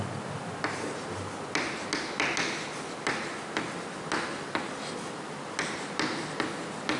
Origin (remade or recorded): recorded